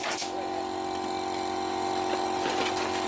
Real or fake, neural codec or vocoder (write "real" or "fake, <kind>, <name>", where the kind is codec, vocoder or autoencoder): real